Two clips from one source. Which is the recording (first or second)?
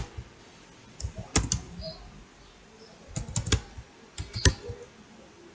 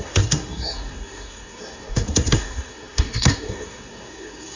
first